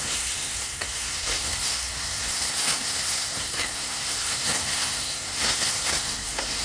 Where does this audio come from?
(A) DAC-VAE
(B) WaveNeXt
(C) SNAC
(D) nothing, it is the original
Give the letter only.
C